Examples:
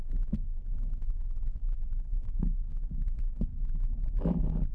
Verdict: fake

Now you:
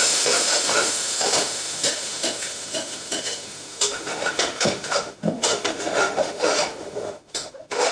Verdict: fake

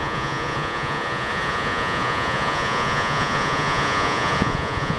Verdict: fake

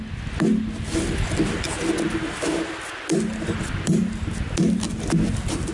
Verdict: real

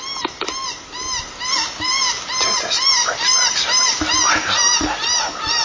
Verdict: real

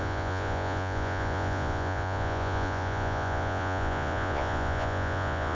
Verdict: fake